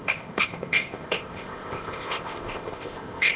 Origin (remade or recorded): remade